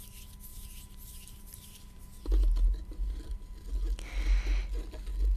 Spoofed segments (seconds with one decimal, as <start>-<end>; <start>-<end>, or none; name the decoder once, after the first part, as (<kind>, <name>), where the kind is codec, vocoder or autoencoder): 0.5-3.7 (vocoder, BigVGAN v2)